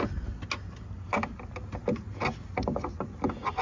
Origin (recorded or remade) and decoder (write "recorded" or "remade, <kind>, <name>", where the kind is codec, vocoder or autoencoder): recorded